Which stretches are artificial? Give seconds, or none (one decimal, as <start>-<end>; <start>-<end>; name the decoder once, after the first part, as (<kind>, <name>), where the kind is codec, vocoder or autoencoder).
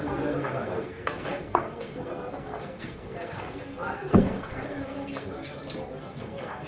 0.0-5.5 (codec, SNAC); 6.0-6.7